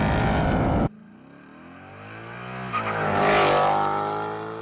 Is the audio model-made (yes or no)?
no